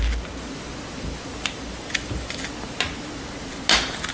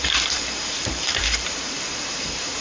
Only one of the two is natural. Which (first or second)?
first